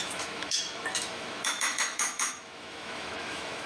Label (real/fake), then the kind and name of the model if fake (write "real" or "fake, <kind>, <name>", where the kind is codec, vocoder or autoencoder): fake, autoencoder, DAC-VAE